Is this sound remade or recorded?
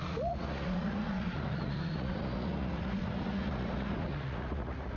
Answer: remade